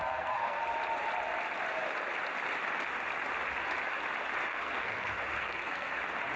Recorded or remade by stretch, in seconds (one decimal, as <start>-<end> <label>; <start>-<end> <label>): 0.0-0.6 remade; 0.6-4.5 recorded; 4.5-6.0 remade; 6.0-6.4 recorded